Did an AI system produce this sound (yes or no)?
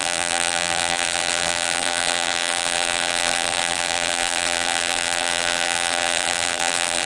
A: yes